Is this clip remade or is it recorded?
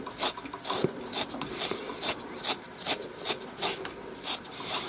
recorded